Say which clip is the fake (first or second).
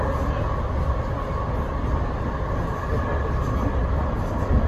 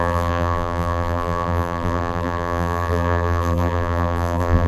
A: second